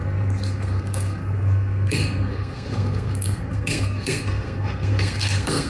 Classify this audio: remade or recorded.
remade